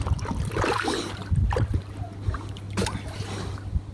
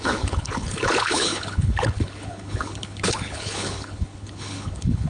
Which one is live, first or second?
first